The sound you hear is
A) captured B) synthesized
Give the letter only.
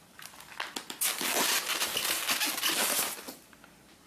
A